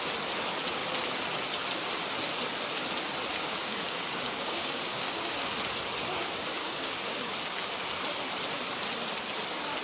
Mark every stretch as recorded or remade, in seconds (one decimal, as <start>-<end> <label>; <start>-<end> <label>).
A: 0.0-3.3 recorded; 3.3-5.5 remade; 5.5-6.6 recorded; 6.6-7.3 remade; 7.3-9.8 recorded